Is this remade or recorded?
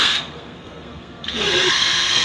remade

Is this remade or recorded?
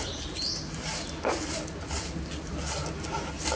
recorded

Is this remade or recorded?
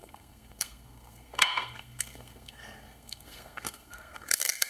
remade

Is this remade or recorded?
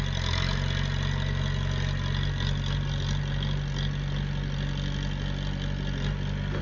recorded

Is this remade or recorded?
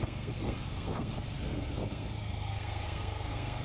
remade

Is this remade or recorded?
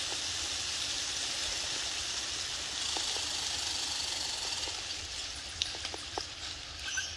recorded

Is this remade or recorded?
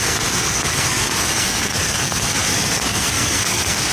remade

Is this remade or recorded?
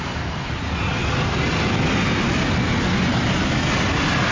recorded